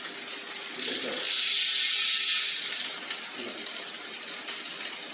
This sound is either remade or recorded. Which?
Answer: recorded